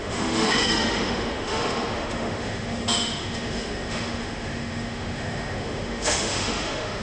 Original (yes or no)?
no